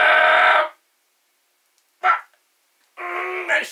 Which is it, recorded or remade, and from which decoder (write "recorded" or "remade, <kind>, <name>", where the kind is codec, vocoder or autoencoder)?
recorded